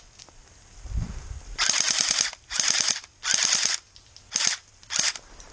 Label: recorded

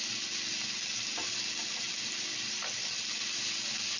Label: recorded